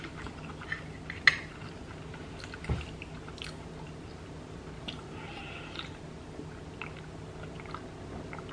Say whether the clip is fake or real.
real